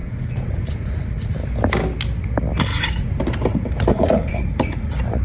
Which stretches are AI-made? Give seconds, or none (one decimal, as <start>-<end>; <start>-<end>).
0.0-1.3; 2.7-3.2; 3.9-5.2